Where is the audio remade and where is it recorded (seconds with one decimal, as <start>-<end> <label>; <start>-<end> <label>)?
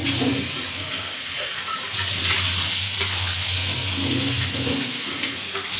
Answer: 0.0-0.7 recorded; 0.7-1.7 remade; 1.7-2.7 recorded; 2.7-5.8 remade